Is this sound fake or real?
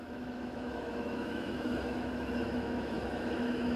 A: fake